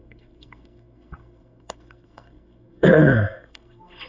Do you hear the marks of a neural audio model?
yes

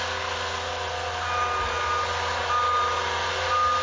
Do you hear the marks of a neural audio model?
no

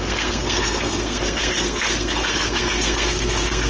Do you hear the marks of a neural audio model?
yes